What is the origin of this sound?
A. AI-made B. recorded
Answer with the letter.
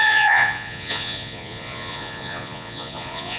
A